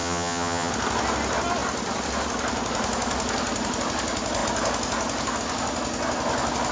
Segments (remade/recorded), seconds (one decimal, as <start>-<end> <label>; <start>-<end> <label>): 0.0-0.7 remade; 0.7-6.7 recorded